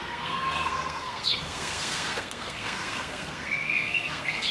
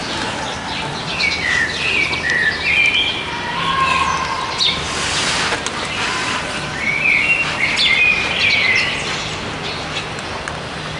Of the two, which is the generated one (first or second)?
first